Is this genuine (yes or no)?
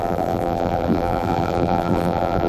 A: no